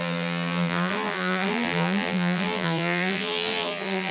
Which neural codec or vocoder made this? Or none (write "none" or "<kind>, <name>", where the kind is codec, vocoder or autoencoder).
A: vocoder, BigVGAN v2